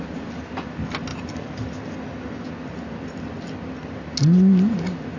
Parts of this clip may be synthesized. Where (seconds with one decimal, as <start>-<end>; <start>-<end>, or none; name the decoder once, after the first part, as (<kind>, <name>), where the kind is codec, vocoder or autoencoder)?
none